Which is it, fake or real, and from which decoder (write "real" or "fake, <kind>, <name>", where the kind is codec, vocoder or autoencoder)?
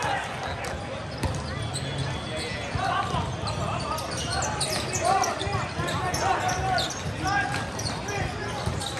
real